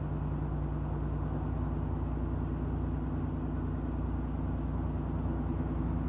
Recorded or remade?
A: recorded